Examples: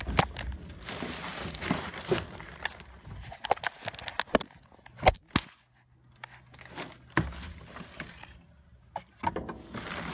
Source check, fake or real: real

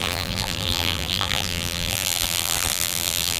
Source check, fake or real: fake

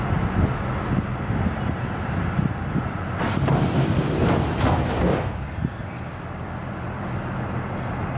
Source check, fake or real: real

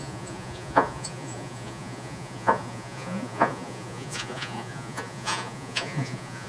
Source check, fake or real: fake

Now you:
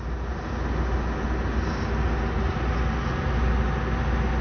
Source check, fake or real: real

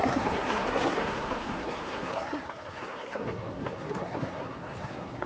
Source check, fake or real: fake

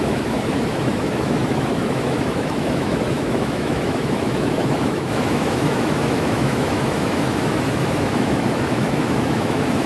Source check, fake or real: fake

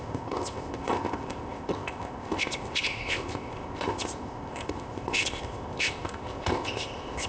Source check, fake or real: fake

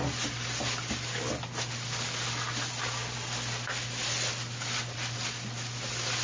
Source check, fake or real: real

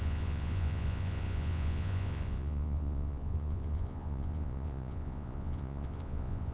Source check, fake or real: fake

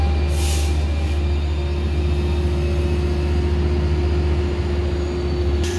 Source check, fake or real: real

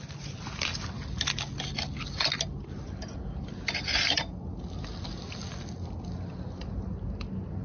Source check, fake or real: real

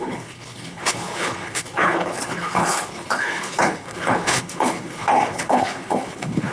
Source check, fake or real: fake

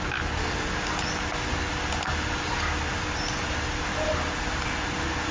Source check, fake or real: real